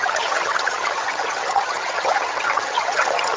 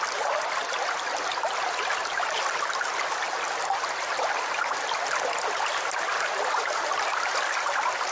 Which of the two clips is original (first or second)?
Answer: second